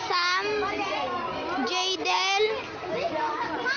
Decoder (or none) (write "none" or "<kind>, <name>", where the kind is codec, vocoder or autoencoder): none